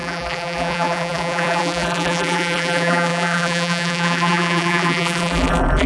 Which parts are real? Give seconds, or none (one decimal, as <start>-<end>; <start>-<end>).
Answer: none

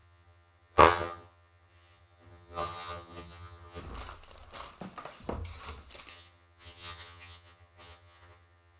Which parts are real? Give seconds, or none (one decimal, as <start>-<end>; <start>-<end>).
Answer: 3.8-6.1

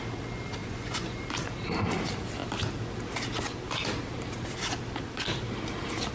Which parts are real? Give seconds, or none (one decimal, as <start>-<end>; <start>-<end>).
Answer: 0.0-0.6; 1.2-6.1

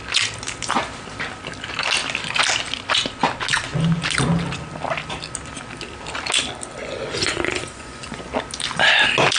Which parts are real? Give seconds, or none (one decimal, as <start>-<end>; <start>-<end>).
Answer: 0.0-6.8; 8.3-9.4